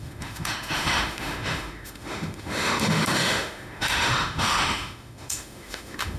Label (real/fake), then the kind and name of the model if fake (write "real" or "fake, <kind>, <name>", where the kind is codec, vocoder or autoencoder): fake, autoencoder, DAC-VAE